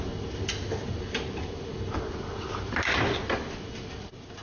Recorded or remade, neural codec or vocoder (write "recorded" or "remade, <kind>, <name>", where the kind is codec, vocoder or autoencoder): recorded